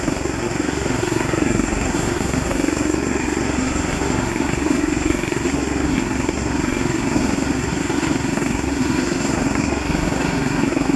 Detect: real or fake fake